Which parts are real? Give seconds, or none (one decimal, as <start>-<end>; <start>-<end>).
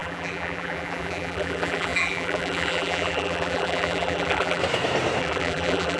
4.6-5.2